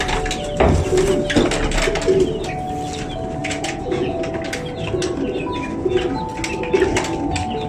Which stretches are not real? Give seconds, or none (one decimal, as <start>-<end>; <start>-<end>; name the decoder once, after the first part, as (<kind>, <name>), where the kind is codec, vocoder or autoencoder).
3.4-4.2 (vocoder, Vocos)